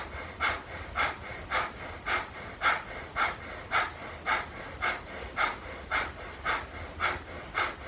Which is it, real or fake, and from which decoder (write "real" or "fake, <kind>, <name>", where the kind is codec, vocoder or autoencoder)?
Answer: real